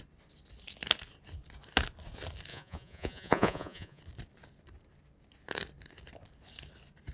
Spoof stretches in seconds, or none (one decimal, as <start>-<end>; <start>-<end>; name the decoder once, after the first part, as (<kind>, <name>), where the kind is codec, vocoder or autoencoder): 2.5-4.0 (vocoder, Vocos)